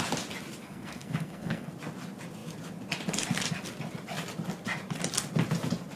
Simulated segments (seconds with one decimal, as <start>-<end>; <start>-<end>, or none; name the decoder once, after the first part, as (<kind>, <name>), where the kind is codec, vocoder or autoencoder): 0.6-1.7 (codec, SNAC)